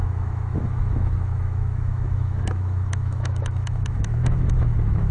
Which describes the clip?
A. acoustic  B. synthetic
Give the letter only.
B